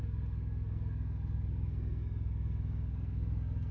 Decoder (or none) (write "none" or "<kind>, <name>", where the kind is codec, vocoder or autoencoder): codec, SNAC